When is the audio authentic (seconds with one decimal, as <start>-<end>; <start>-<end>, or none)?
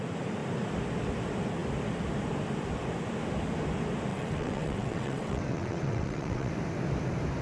0.0-4.1; 6.5-7.4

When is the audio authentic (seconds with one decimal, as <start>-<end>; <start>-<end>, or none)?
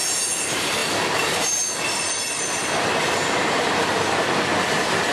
0.0-0.8; 1.5-5.1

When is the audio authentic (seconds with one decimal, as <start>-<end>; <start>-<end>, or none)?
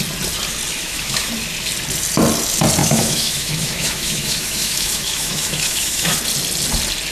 0.0-0.8; 1.3-2.8; 6.2-7.1